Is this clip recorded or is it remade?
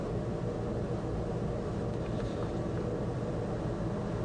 recorded